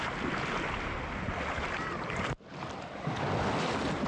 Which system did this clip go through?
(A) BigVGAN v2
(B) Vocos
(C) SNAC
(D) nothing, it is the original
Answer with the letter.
D